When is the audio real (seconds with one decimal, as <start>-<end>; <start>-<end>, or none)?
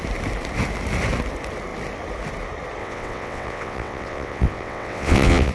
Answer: 0.0-2.8